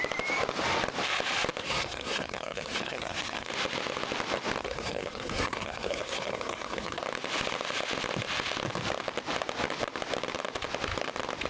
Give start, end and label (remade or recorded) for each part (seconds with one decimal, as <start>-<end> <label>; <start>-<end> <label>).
0.0-1.6 recorded; 1.6-3.5 remade; 3.5-4.6 recorded; 4.6-7.0 remade; 7.0-11.5 recorded